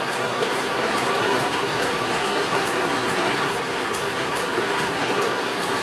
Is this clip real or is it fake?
fake